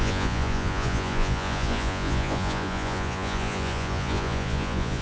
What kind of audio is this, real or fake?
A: fake